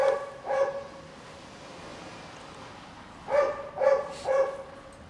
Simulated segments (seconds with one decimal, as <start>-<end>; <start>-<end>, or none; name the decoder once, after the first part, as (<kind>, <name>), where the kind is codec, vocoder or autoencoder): none